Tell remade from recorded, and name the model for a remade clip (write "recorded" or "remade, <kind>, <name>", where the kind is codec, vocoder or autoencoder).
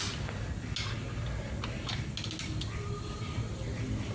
recorded